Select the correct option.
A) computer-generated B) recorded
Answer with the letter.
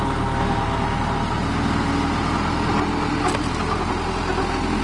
B